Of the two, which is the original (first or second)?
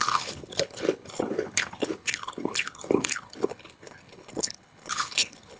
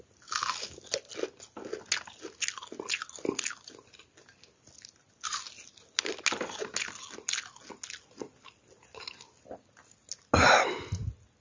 second